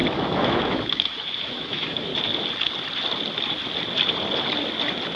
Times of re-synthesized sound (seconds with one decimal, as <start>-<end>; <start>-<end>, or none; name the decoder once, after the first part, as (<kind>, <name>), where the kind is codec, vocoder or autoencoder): 0.0-2.1 (autoencoder, DAC-VAE)